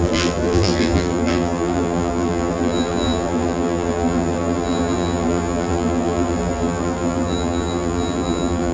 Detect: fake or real fake